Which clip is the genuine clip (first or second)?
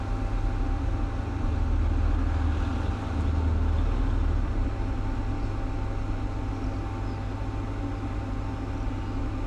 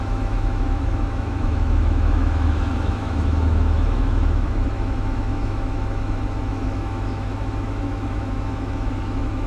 first